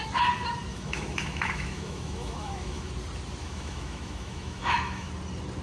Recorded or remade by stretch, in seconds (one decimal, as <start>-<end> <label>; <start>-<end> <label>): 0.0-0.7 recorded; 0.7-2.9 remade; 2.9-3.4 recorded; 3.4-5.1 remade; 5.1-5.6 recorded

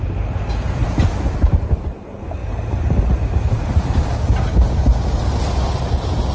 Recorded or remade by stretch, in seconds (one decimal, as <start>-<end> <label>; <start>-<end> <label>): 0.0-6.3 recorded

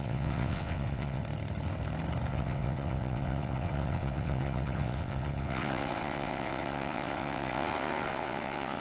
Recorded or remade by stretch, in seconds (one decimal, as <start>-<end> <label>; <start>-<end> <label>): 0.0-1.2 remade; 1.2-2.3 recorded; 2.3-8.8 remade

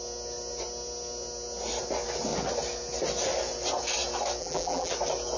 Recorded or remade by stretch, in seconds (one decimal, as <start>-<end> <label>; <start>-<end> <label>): 0.0-4.4 recorded; 4.4-4.9 remade; 4.9-5.4 recorded